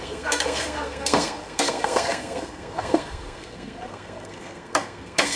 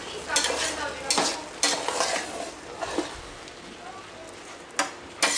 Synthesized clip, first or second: first